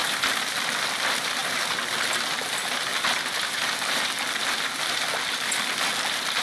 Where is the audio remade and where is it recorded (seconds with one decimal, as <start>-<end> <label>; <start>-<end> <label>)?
0.0-0.9 recorded; 0.9-2.9 remade; 2.9-3.8 recorded; 3.8-6.4 remade